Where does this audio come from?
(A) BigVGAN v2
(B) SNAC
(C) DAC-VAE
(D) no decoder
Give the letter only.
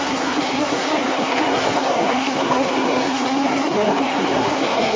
B